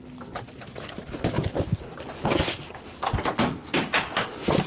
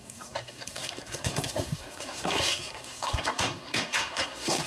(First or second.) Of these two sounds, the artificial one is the second